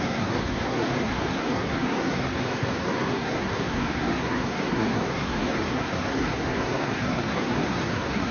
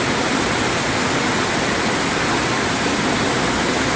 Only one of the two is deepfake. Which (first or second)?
first